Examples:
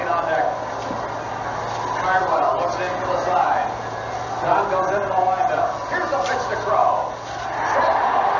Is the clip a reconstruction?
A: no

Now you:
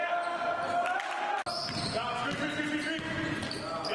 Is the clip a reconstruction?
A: no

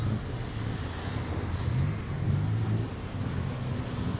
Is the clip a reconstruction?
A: no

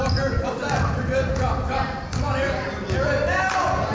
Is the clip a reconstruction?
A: no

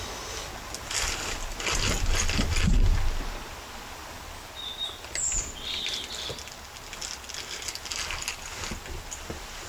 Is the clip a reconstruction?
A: no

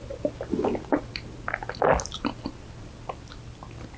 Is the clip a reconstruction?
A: no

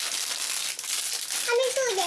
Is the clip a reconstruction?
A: no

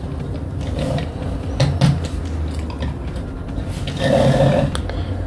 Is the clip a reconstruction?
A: no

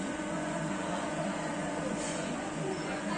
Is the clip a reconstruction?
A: yes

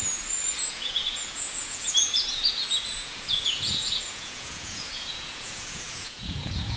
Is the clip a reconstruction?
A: yes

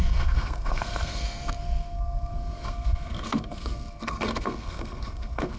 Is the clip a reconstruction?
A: yes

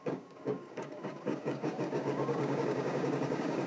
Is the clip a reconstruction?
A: yes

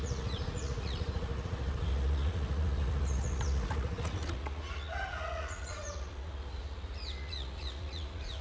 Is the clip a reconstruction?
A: yes